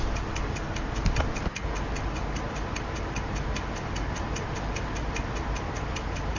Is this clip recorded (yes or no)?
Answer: yes